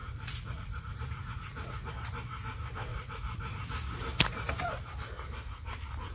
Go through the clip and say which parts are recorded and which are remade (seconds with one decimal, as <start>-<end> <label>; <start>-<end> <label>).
0.0-1.9 remade; 1.9-2.9 recorded; 2.9-3.6 remade; 3.6-6.1 recorded